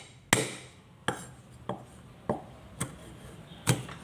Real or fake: real